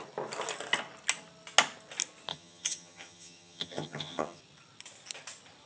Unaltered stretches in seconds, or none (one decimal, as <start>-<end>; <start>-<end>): 0.0-2.3; 4.4-5.7